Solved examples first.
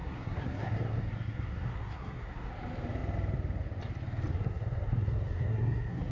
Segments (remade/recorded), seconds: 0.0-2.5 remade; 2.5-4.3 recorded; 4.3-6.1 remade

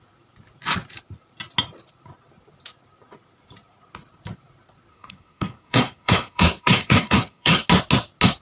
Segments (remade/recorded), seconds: 0.0-4.9 recorded; 4.9-7.7 remade; 7.7-8.4 recorded

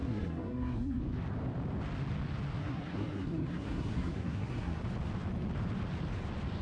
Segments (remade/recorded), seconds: 0.0-1.0 remade; 1.0-2.6 recorded; 2.6-4.8 remade; 4.8-6.6 recorded

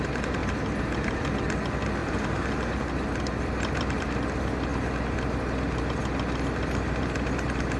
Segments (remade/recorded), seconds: 0.0-2.0 recorded; 2.0-2.9 remade; 2.9-7.8 recorded

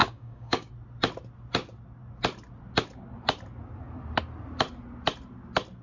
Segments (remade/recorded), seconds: 0.0-0.7 remade; 0.7-5.8 recorded

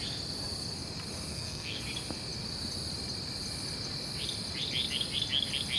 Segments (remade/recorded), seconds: 0.0-1.3 recorded; 1.3-1.8 remade; 1.8-5.8 recorded

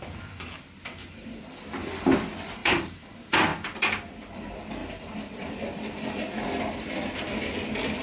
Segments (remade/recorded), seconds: 0.0-1.0 recorded; 1.0-1.5 remade; 1.5-2.6 recorded; 2.6-3.1 remade; 3.1-4.8 recorded; 4.8-5.6 remade; 5.6-8.0 recorded

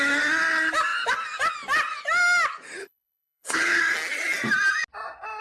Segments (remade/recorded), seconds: 0.0-2.8 recorded; 2.8-3.8 remade; 3.8-5.4 recorded